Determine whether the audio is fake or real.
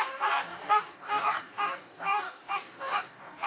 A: fake